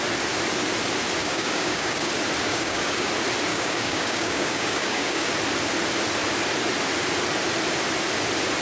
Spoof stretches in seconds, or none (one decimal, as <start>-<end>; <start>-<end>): 1.2-2.1; 2.5-3.1; 3.5-5.3